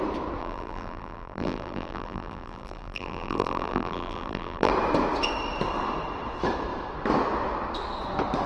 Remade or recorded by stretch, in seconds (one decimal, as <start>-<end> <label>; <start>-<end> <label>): 0.0-0.4 recorded; 0.4-4.7 remade; 4.7-8.5 recorded